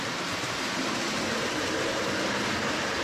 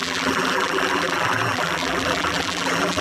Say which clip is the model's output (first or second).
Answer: second